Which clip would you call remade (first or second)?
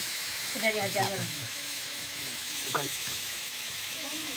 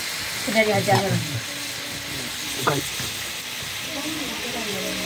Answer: first